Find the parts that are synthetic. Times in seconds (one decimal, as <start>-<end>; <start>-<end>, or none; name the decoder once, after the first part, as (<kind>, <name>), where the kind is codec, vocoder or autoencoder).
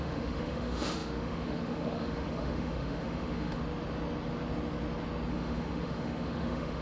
0.0-3.6 (autoencoder, DAC-VAE); 5.3-6.8